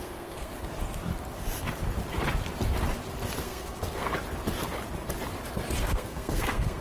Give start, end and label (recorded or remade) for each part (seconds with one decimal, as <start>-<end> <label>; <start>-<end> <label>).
0.0-0.5 remade; 0.5-3.4 recorded; 3.4-4.1 remade; 4.1-5.8 recorded; 5.8-6.8 remade